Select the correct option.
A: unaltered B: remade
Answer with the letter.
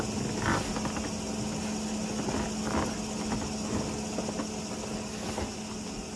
A